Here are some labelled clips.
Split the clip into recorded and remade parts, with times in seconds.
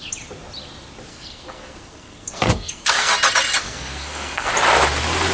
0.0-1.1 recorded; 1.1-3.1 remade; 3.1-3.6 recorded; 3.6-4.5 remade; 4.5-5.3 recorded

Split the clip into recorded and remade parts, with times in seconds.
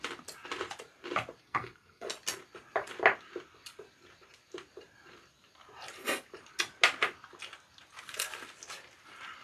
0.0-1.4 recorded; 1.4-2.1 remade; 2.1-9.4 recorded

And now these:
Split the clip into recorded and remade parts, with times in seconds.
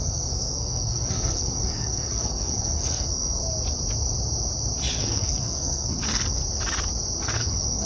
0.0-3.4 remade; 3.4-4.9 recorded; 4.9-6.4 remade; 6.4-7.2 recorded; 7.2-7.9 remade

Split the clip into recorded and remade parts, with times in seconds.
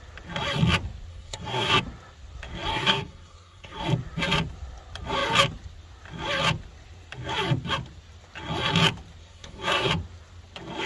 0.0-1.1 recorded; 1.1-1.8 remade; 1.8-2.7 recorded; 2.7-3.8 remade; 3.8-9.2 recorded; 9.2-9.9 remade; 9.9-10.9 recorded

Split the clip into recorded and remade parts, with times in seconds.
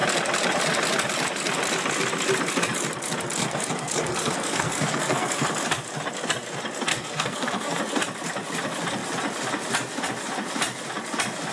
0.0-3.4 recorded; 3.4-5.5 remade; 5.5-6.9 recorded; 6.9-7.8 remade; 7.8-11.5 recorded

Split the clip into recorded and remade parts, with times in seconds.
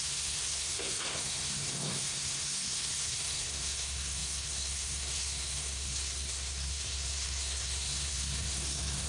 0.0-9.1 remade